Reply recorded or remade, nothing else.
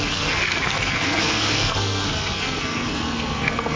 remade